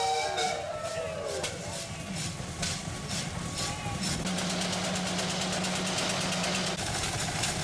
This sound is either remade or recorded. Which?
recorded